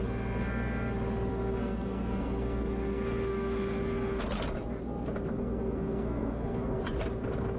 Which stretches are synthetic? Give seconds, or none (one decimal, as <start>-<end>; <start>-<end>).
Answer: 1.3-4.2; 5.3-6.8